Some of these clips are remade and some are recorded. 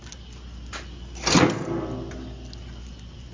recorded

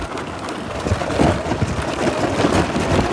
recorded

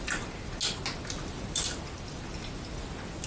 recorded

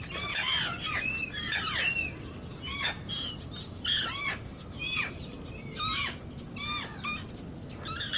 recorded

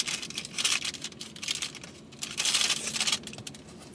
recorded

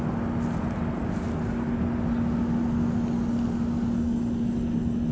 recorded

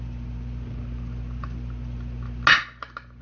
recorded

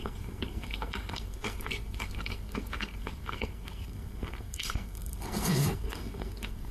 remade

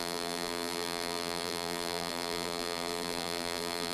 remade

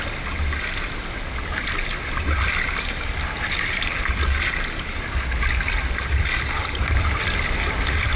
recorded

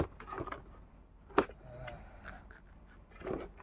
recorded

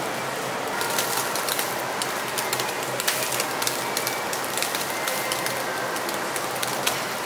recorded